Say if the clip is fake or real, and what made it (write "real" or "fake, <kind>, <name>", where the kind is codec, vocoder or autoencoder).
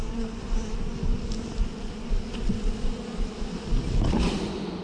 real